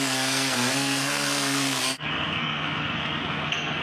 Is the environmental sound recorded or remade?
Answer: remade